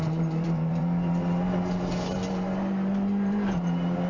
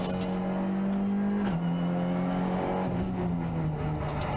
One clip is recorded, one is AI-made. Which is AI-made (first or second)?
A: first